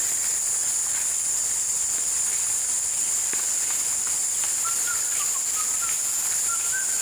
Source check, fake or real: real